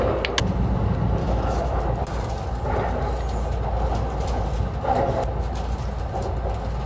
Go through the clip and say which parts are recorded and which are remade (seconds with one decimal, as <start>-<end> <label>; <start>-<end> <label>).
0.0-1.2 recorded; 1.2-1.8 remade; 1.8-6.9 recorded